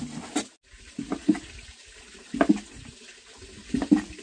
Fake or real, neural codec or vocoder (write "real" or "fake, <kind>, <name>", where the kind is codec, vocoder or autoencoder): real